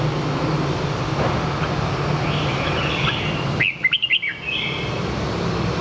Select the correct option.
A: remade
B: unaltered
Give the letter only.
B